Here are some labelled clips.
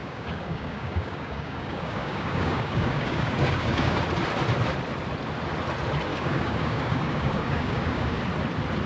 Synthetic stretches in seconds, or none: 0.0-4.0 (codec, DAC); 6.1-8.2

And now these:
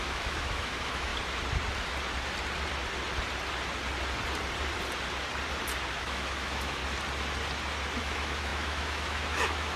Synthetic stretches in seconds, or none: 0.0-1.1 (autoencoder, DAC-VAE); 5.9-6.8; 8.0-9.8

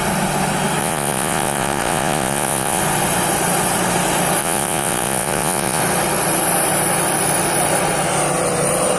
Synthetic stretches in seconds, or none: 0.8-2.8 (vocoder, Vocos); 4.4-5.8

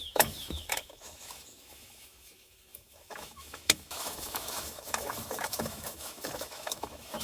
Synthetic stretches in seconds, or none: 0.0-7.2 (autoencoder, DAC-VAE)

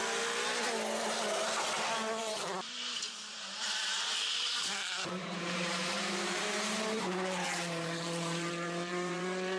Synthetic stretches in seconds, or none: 2.2-9.6 (vocoder, BigVGAN v2)

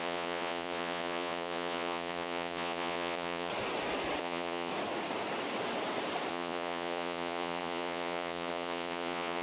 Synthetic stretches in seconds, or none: 0.0-3.5 (vocoder, Vocos); 4.2-4.7; 6.3-9.4